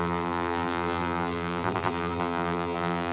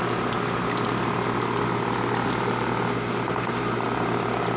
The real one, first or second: second